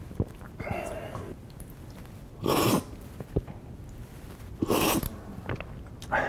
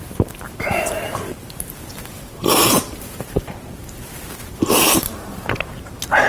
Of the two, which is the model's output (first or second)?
second